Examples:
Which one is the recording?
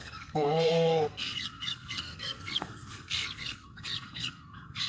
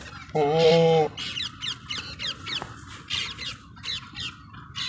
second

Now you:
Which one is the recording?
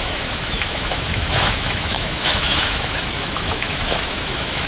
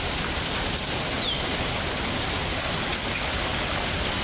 second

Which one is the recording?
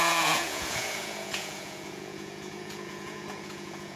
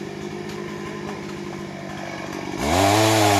second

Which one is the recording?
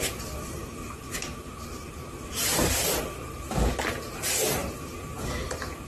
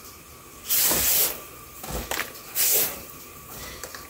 second